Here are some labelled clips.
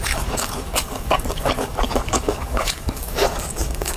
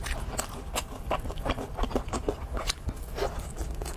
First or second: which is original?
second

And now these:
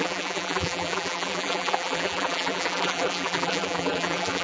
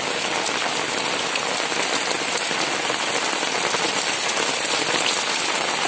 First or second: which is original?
second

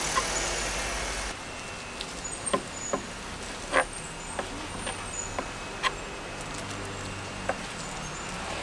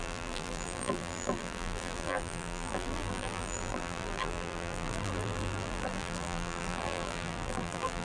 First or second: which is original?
first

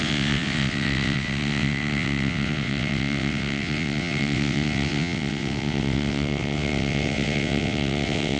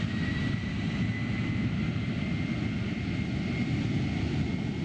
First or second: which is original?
second